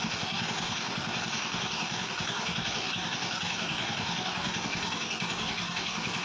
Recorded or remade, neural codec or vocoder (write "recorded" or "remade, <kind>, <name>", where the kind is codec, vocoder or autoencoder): remade, codec, DAC